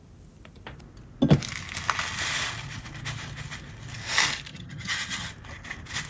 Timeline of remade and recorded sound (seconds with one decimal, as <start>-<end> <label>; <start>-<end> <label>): 0.0-4.5 recorded; 4.5-5.3 remade; 5.3-6.1 recorded